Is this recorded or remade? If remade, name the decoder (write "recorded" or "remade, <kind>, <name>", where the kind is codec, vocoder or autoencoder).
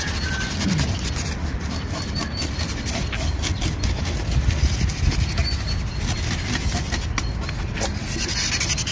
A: recorded